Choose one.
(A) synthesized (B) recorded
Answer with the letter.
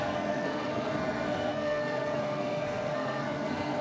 A